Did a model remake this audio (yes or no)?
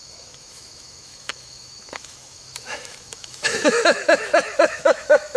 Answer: yes